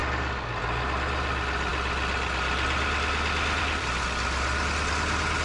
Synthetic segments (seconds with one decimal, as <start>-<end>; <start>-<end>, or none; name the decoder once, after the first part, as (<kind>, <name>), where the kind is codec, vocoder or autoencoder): none